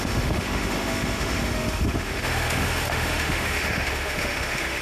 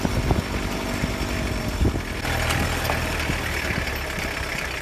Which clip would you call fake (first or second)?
first